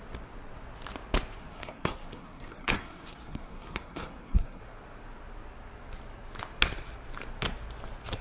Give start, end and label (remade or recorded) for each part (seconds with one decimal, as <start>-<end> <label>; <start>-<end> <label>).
0.0-1.4 recorded; 1.4-4.6 remade; 4.6-8.2 recorded